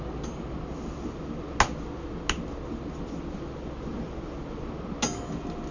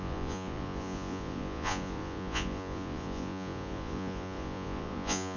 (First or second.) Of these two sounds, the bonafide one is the first